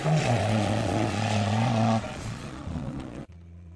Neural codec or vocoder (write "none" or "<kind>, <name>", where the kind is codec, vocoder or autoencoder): vocoder, Vocos